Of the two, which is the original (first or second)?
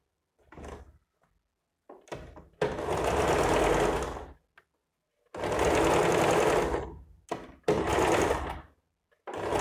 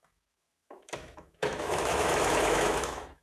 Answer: first